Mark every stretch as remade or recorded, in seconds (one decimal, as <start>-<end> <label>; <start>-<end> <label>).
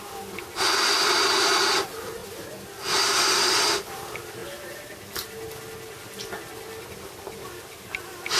0.0-2.2 recorded; 2.2-3.6 remade; 3.6-8.4 recorded